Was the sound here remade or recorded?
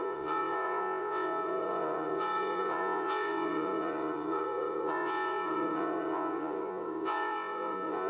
remade